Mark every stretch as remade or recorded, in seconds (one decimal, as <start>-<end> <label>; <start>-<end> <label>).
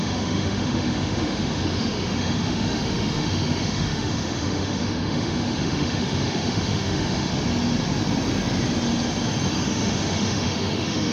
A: 0.0-7.3 remade; 7.3-9.5 recorded; 9.5-11.1 remade